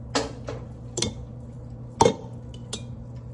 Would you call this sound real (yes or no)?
yes